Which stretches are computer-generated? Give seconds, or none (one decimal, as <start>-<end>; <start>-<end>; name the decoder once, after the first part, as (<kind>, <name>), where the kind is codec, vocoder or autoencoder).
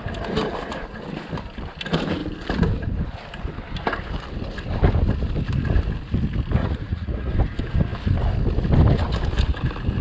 6.6-7.3 (vocoder, Vocos)